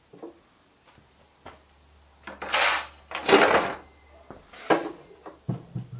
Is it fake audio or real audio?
real